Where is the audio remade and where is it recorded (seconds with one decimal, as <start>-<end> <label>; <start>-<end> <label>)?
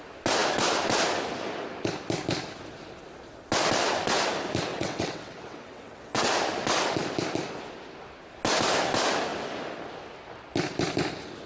0.0-4.7 recorded; 4.7-6.3 remade; 6.3-11.5 recorded